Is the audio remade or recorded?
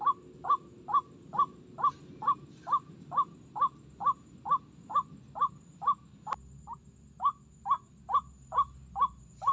recorded